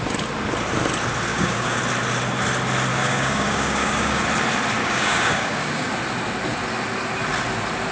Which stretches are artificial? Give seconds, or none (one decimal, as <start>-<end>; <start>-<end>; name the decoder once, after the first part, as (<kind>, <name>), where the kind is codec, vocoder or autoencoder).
1.3-1.8 (codec, DAC); 2.9-4.2; 4.8-5.9